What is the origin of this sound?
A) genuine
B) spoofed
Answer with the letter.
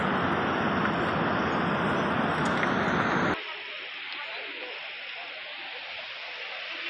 A